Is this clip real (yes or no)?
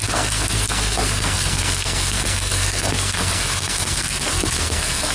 no